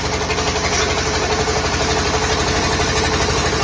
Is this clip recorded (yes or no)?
yes